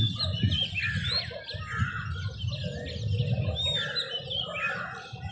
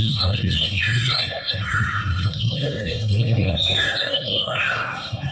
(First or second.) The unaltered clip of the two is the first